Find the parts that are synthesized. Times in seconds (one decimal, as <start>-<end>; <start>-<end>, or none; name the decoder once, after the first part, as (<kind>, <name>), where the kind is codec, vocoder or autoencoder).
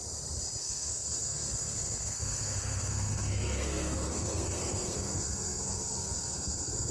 0.6-6.9 (codec, SNAC)